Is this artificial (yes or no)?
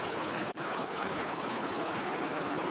yes